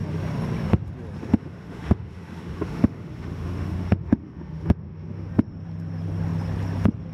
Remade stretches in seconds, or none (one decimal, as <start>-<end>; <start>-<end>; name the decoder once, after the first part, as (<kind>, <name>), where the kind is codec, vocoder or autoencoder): 1.2-5.3 (autoencoder, DAC-VAE)